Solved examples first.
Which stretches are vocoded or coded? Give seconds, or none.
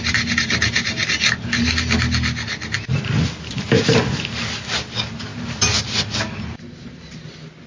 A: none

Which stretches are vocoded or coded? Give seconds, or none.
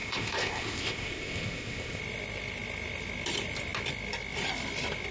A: 0.0-2.0 (codec, ZipCodec)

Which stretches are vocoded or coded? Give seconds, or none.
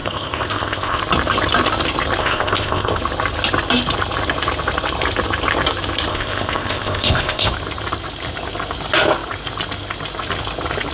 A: 0.0-1.0 (codec, ZipCodec); 2.2-3.0; 6.1-7.5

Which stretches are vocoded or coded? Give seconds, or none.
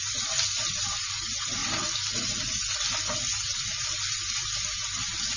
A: none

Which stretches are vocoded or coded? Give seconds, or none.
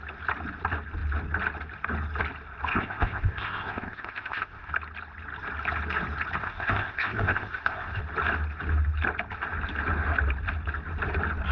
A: 2.7-4.7 (codec, ZipCodec); 6.4-8.0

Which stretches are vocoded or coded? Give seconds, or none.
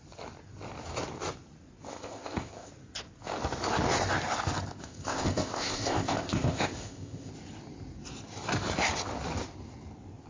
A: 1.9-2.7 (codec, ZipCodec); 4.8-7.3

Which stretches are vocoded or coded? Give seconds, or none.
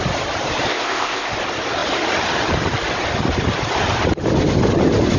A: 0.7-1.3 (codec, ZipCodec)